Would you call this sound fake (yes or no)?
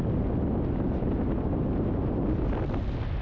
no